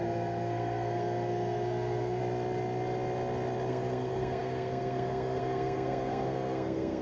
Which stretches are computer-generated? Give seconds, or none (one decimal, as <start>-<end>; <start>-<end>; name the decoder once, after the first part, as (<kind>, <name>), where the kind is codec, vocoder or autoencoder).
0.0-2.2 (codec, SNAC); 3.7-7.0